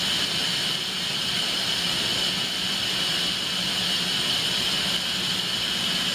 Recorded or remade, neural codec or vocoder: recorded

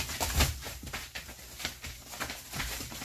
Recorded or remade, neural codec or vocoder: recorded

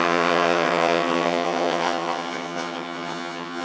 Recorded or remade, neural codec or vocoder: remade, vocoder, HiFi-GAN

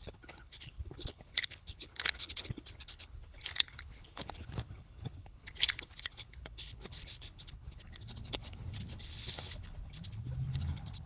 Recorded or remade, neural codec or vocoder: remade, codec, HILCodec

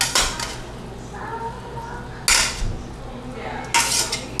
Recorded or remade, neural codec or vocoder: recorded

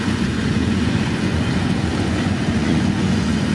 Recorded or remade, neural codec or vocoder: remade, vocoder, Vocos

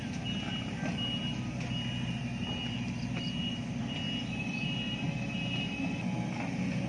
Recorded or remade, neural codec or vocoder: recorded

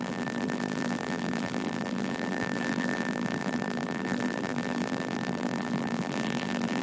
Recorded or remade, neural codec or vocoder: remade, vocoder, BigVGAN v2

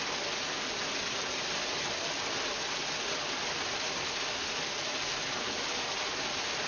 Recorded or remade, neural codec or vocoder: recorded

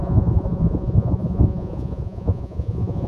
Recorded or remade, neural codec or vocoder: remade, vocoder, Vocos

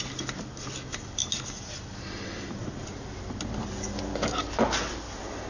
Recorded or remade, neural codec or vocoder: recorded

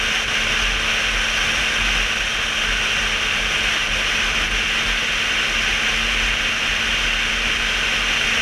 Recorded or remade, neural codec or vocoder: recorded